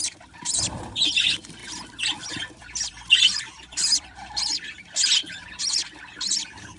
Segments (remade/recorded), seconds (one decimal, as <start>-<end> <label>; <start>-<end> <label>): 0.0-5.6 remade; 5.6-6.3 recorded; 6.3-6.8 remade

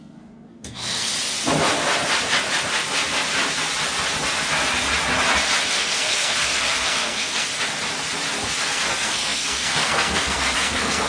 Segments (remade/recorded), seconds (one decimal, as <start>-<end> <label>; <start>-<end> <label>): 0.0-1.1 remade; 1.1-5.7 recorded; 5.7-7.5 remade; 7.5-8.6 recorded; 8.6-11.1 remade

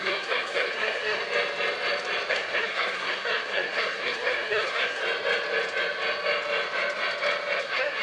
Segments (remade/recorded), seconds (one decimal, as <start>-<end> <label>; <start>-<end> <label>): 0.0-1.2 remade; 1.2-2.3 recorded; 2.3-5.0 remade; 5.0-7.6 recorded; 7.6-8.0 remade